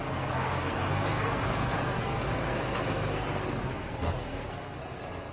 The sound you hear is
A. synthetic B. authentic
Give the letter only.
A